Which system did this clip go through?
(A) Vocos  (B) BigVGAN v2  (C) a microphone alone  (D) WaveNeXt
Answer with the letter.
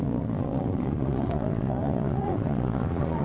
A